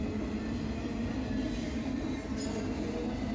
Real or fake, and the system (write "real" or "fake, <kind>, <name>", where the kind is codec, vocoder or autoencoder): real